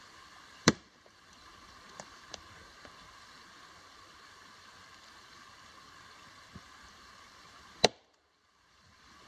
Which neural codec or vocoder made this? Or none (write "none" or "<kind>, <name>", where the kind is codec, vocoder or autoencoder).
vocoder, BigVGAN v2